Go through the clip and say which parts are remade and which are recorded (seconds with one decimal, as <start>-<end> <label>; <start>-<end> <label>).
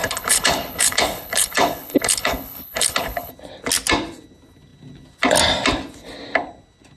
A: 0.0-3.3 remade; 3.3-7.0 recorded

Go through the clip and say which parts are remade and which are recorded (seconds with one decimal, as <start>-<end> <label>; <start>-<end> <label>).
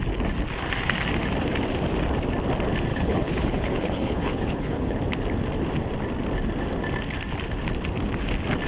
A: 0.0-2.9 recorded; 2.9-5.0 remade; 5.0-8.7 recorded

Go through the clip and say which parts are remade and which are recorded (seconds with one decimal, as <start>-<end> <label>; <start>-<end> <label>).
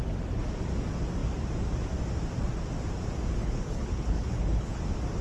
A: 0.0-3.4 recorded; 3.4-4.8 remade; 4.8-5.2 recorded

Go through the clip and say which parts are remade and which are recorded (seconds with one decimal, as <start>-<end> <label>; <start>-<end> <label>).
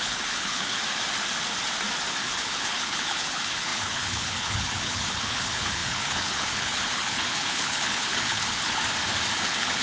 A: 0.0-0.8 remade; 0.8-2.2 recorded; 2.2-8.8 remade; 8.8-9.4 recorded; 9.4-9.8 remade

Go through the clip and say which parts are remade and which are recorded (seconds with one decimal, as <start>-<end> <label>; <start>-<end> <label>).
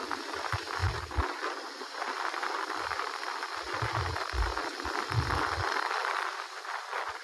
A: 0.0-7.2 recorded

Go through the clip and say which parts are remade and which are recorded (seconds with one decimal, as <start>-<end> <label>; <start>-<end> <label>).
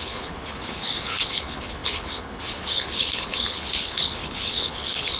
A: 0.0-5.2 remade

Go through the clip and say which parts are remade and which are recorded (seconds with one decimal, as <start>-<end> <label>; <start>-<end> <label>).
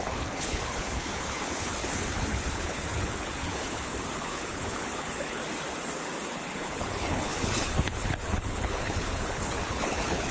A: 0.0-5.4 remade; 5.4-6.3 recorded; 6.3-10.3 remade